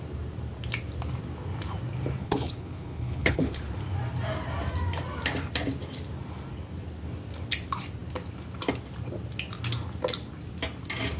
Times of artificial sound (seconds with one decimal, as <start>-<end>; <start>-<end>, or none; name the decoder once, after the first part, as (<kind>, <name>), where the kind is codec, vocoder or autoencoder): 2.2-3.6 (codec, HILCodec)